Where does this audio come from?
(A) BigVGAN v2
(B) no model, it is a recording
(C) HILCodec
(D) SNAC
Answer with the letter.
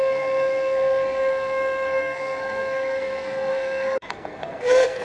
D